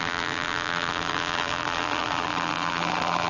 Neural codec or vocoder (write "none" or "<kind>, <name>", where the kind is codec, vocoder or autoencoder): vocoder, BigVGAN v2